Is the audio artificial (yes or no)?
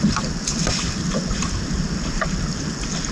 no